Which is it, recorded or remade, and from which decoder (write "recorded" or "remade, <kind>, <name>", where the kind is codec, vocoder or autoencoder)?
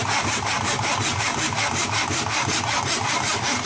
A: recorded